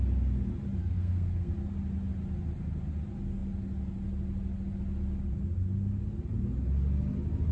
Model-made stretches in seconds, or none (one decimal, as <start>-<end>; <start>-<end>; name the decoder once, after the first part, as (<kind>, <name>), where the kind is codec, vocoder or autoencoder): 0.8-1.5 (codec, SNAC)